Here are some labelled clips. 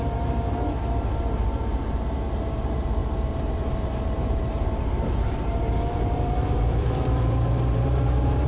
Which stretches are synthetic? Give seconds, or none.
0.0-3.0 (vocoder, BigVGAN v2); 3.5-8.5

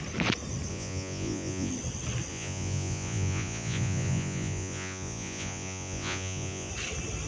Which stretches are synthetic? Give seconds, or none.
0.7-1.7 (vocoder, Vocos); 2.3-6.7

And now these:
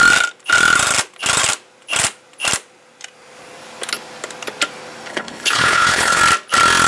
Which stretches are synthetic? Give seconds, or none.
5.1-6.2 (codec, HILCodec)

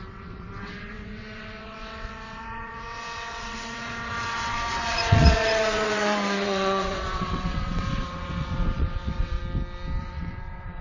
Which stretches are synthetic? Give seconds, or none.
0.0-9.4 (vocoder, WaveNeXt); 10.0-10.8

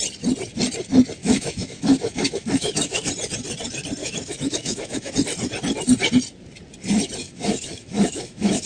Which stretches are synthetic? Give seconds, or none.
1.2-3.1 (autoencoder, DAC-VAE); 4.0-5.1; 7.2-8.7